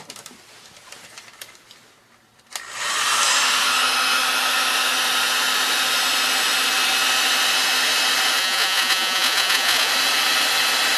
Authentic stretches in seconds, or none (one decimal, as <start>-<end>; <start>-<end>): 0.0-8.4; 9.9-11.0